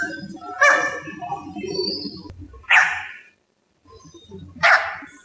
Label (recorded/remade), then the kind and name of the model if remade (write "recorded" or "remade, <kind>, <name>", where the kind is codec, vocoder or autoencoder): remade, vocoder, BigVGAN v2